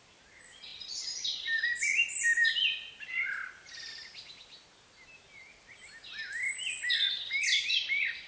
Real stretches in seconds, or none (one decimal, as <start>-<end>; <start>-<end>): 0.0-8.3